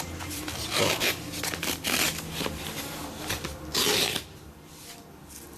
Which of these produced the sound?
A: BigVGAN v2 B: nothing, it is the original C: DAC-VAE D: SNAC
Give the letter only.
B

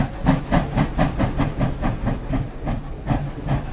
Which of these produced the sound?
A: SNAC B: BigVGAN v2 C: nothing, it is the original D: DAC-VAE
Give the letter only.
C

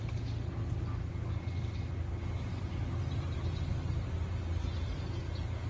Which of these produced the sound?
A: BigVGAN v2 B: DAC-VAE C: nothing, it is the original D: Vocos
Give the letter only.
C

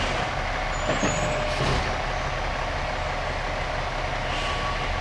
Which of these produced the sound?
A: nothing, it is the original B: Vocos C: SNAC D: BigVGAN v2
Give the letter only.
A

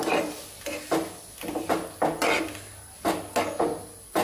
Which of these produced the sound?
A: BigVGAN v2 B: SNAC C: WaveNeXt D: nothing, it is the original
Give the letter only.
D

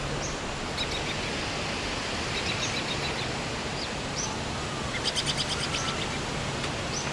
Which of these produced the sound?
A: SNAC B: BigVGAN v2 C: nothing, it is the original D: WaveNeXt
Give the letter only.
C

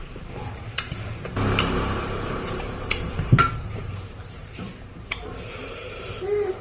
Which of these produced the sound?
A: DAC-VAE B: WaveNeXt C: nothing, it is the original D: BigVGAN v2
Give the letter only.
D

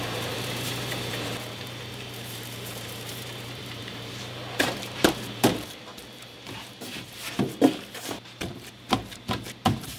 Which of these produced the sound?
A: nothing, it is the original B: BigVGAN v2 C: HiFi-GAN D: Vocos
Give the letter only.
B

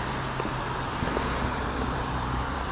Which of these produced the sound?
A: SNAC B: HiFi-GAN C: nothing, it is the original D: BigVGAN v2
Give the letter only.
D